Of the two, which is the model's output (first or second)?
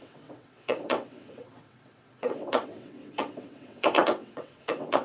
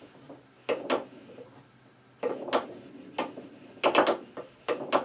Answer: first